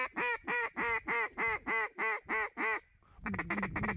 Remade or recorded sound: recorded